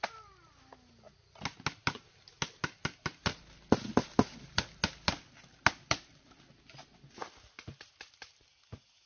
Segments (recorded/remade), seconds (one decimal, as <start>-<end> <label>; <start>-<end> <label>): 0.0-9.1 recorded